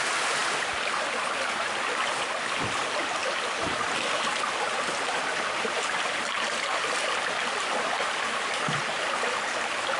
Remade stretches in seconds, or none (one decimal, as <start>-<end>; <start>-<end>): none